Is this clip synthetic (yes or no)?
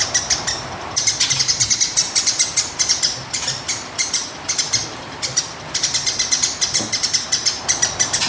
no